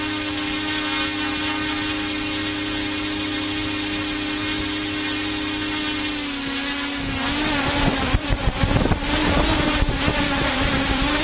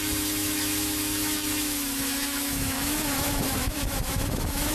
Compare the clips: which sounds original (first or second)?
first